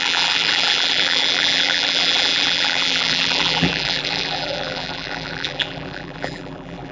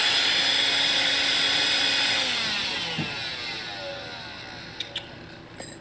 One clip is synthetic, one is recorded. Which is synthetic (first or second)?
first